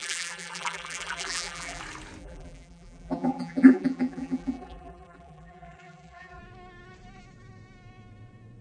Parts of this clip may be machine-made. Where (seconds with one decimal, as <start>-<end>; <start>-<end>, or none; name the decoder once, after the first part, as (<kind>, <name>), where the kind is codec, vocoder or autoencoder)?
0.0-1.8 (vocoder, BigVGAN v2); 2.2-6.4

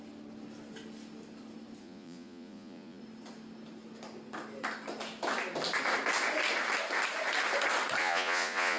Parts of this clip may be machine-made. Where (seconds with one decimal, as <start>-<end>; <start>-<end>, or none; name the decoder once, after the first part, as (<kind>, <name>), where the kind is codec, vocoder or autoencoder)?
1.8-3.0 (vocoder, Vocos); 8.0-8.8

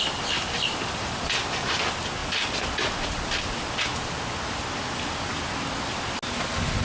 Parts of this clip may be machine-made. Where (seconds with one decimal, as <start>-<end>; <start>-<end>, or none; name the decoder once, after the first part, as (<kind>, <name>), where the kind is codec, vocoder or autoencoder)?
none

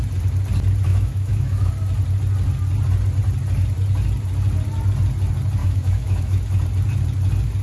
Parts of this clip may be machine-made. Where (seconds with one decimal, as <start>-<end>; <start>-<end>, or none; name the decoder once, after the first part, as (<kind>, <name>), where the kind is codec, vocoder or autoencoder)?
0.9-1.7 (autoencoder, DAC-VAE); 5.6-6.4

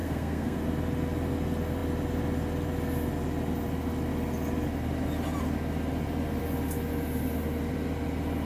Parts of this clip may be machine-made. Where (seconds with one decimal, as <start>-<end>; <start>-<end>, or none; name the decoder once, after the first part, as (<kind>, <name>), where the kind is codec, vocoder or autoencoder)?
0.0-0.6 (codec, SNAC)

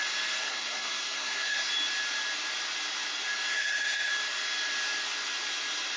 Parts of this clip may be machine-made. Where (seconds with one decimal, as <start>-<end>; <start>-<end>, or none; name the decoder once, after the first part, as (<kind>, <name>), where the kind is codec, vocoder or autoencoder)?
0.4-1.7 (codec, SNAC); 3.5-4.1

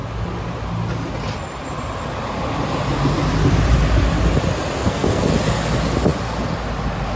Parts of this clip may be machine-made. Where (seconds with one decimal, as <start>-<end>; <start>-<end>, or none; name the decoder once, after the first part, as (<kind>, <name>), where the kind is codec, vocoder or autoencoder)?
4.8-5.3 (codec, SNAC)